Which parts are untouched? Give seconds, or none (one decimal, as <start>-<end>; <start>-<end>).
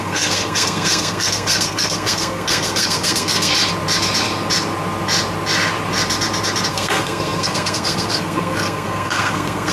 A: 3.5-6.7